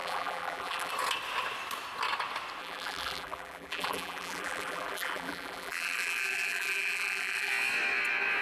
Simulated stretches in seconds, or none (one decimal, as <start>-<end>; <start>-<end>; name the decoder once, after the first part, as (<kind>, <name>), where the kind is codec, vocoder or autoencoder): 0.0-0.9 (vocoder, BigVGAN v2); 2.6-7.5